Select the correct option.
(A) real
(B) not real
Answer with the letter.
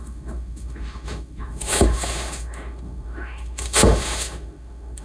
B